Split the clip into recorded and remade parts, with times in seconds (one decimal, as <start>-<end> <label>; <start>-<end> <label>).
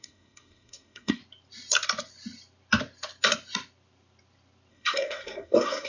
0.0-1.2 remade; 1.2-4.7 recorded; 4.7-5.9 remade